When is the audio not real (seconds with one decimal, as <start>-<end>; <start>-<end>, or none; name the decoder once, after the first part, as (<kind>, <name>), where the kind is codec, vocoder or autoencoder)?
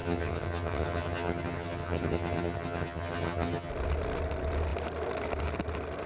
0.0-3.7 (vocoder, HiFi-GAN)